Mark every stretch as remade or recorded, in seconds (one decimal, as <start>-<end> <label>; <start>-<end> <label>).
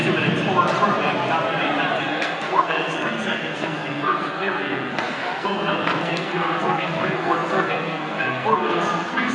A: 0.0-2.0 recorded; 2.0-9.3 remade